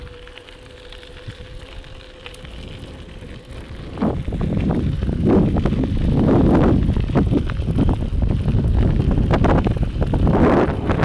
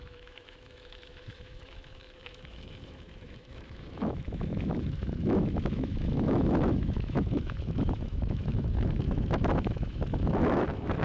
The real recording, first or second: first